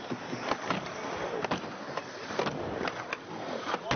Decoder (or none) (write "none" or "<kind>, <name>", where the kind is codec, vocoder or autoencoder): none